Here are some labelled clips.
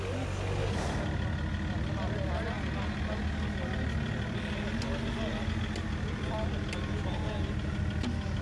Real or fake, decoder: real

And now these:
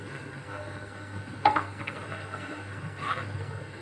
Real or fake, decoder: fake, codec, SNAC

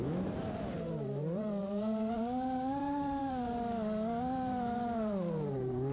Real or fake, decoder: fake, vocoder, BigVGAN v2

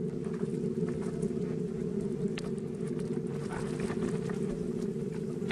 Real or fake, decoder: real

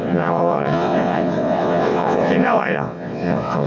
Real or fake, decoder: fake, vocoder, WaveNeXt